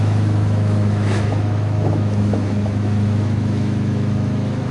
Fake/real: fake